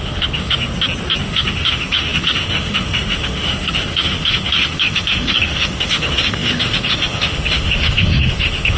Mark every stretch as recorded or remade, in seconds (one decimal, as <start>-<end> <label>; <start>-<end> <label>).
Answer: 0.0-0.7 remade; 0.7-1.2 recorded; 1.2-8.8 remade